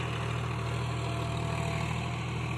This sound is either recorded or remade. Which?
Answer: recorded